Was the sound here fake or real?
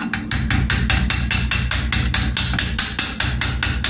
real